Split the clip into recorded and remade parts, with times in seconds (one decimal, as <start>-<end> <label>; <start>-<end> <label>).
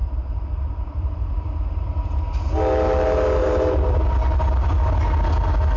0.0-2.3 remade; 2.3-3.4 recorded; 3.4-4.0 remade; 4.0-5.8 recorded